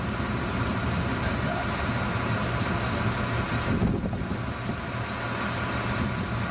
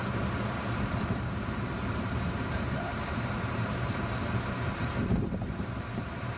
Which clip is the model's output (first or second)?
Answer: second